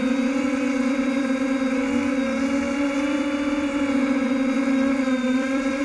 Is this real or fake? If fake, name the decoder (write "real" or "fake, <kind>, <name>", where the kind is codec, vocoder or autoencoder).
fake, vocoder, BigVGAN v2